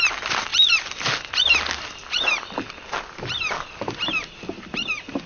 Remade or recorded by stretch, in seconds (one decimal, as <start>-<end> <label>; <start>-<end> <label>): 0.0-0.5 recorded; 0.5-1.3 remade; 1.3-2.0 recorded; 2.0-5.3 remade